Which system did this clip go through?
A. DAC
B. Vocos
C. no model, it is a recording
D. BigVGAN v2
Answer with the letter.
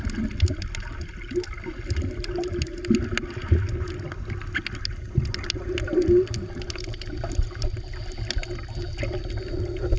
C